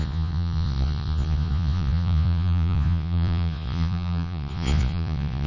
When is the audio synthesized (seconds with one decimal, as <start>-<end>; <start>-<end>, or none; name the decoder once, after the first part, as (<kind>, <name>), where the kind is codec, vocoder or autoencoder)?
0.0-5.5 (vocoder, Vocos)